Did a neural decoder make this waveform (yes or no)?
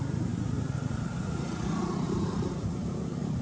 yes